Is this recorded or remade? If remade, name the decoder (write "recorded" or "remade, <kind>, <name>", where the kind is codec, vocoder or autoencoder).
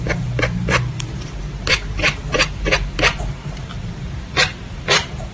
remade, vocoder, BigVGAN v2